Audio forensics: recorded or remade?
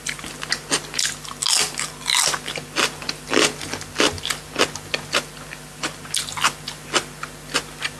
recorded